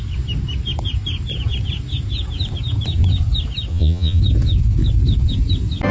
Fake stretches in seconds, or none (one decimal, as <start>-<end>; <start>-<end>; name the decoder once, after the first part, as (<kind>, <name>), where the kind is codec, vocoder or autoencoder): 3.7-4.2 (vocoder, Vocos)